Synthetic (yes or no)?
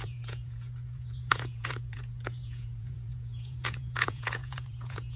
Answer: yes